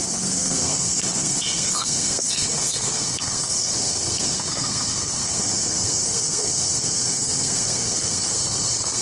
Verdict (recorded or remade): remade